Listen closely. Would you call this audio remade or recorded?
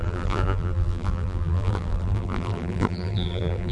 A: remade